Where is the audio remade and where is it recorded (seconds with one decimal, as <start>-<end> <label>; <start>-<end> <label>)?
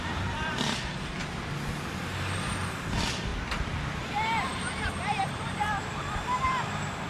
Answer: 0.0-1.2 remade; 1.2-1.9 recorded; 1.9-3.3 remade; 3.3-4.0 recorded; 4.0-7.1 remade